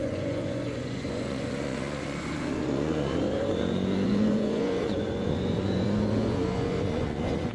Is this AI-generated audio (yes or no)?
yes